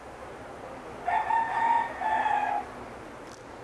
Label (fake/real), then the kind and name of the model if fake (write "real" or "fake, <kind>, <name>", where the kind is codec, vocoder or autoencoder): real